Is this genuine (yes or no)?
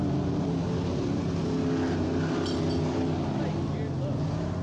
yes